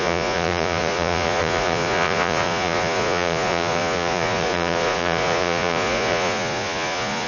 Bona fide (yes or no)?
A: no